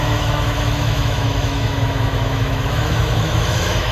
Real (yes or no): no